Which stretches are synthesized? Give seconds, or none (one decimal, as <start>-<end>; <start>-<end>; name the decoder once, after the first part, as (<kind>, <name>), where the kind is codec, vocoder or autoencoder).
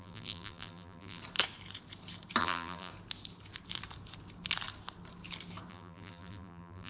0.0-1.2 (vocoder, BigVGAN v2); 2.4-2.9; 5.7-6.9